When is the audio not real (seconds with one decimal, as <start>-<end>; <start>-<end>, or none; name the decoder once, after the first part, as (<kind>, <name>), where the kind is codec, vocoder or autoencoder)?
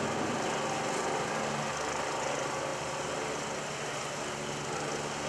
none